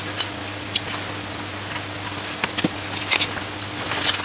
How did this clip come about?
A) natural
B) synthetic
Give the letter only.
A